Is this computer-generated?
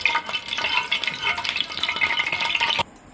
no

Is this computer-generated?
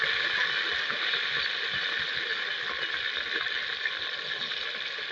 no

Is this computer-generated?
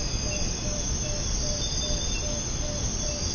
no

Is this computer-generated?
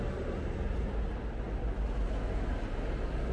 no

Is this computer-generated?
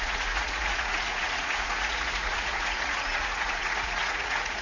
yes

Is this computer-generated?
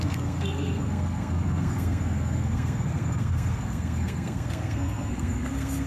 yes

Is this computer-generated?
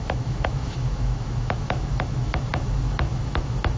yes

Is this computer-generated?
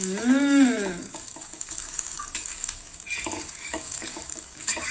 yes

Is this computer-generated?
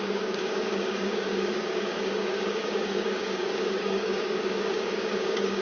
yes